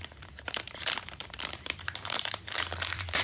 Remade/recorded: remade